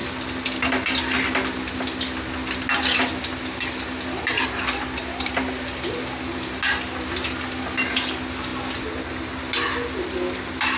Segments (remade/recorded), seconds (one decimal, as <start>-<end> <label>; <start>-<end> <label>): 0.0-10.8 recorded